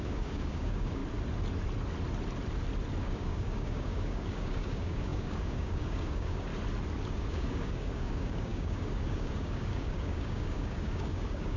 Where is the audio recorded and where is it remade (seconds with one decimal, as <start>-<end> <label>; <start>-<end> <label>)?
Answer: 0.0-1.0 remade; 1.0-3.0 recorded; 3.0-6.5 remade; 6.5-7.1 recorded; 7.1-11.6 remade